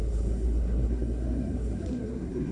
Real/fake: fake